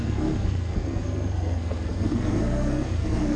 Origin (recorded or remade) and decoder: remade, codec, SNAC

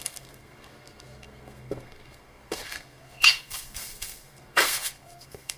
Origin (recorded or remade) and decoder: remade, codec, SNAC